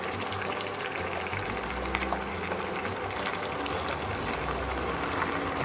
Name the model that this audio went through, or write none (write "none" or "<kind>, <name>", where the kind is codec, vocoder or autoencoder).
none